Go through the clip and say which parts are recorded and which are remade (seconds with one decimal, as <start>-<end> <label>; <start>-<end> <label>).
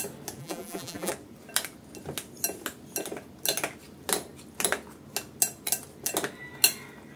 0.0-0.4 recorded; 0.4-1.1 remade; 1.1-7.2 recorded